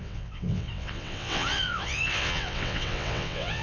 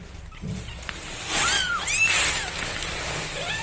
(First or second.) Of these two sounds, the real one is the second